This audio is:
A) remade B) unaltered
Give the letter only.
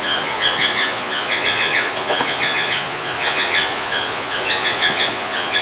A